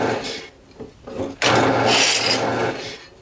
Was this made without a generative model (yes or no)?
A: yes